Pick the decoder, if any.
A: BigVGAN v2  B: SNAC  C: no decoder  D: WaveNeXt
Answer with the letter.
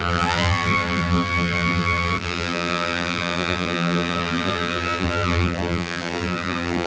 A